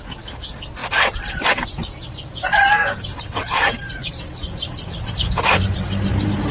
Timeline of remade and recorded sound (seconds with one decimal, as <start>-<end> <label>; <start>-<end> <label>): 0.0-0.8 recorded; 0.8-4.7 remade; 4.7-6.5 recorded